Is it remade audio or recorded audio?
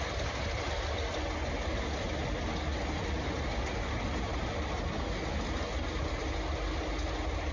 recorded